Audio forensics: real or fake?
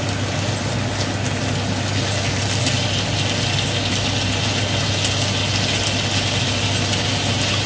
real